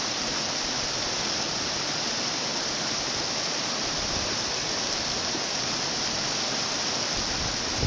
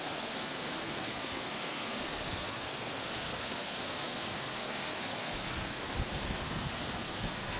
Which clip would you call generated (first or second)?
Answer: second